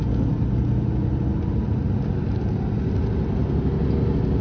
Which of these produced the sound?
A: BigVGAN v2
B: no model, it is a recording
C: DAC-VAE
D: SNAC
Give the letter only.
B